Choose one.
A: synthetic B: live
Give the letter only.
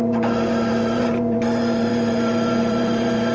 A